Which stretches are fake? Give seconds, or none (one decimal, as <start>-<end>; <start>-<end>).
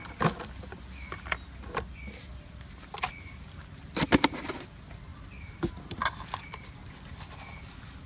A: 5.1-6.7